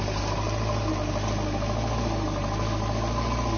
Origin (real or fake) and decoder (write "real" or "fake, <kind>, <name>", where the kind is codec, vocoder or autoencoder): real